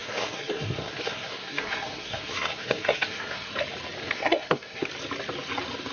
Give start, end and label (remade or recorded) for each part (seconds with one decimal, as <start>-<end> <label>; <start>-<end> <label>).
0.0-3.5 remade; 3.5-4.0 recorded; 4.0-4.9 remade; 4.9-5.9 recorded